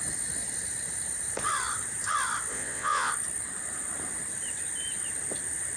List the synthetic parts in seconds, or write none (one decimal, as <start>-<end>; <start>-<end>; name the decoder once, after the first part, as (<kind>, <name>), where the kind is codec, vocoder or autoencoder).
2.5-3.1 (vocoder, Vocos)